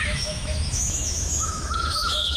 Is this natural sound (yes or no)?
no